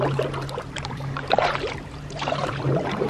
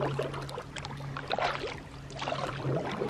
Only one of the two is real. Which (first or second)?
second